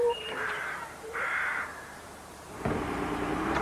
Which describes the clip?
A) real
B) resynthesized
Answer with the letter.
B